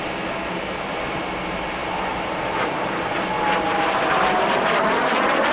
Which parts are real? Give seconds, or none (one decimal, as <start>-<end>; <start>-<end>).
0.0-5.5